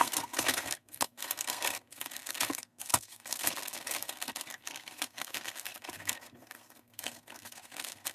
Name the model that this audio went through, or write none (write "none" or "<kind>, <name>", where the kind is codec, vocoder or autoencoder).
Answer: codec, SNAC